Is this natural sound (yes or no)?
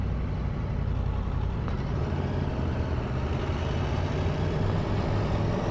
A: yes